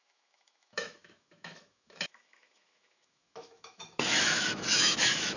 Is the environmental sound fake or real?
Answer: fake